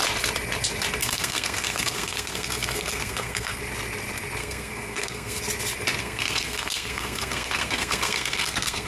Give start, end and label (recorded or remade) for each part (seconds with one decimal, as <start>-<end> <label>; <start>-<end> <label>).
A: 0.0-1.0 recorded; 1.0-3.6 remade; 3.6-4.4 recorded; 4.4-5.4 remade; 5.4-6.0 recorded; 6.0-8.9 remade